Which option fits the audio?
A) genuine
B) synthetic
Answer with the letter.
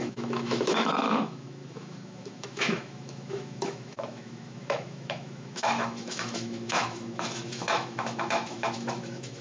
B